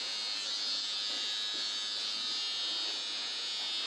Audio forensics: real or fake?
real